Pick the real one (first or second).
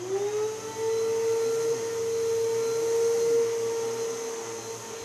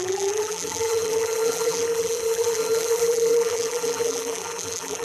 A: first